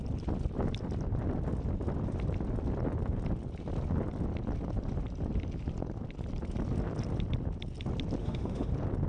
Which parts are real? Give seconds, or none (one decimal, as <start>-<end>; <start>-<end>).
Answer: 0.0-8.2; 8.7-9.1